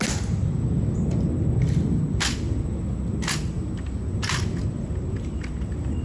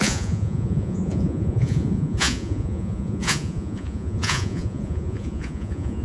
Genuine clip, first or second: first